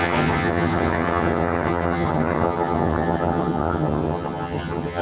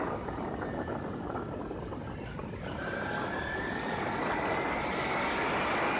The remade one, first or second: first